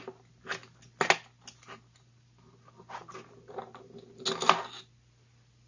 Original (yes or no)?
yes